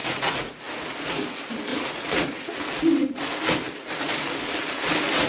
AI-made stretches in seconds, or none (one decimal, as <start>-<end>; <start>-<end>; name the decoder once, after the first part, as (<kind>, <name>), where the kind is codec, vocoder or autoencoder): 0.0-0.6 (vocoder, Vocos); 1.7-2.5